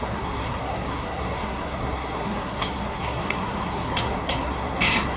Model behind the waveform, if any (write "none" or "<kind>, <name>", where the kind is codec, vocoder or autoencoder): codec, SNAC